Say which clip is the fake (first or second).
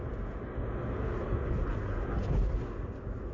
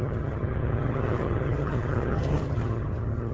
second